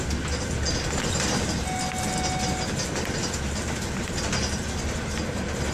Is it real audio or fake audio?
real